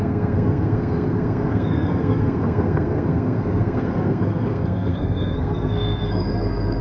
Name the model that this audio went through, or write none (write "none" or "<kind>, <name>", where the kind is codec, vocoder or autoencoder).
codec, SNAC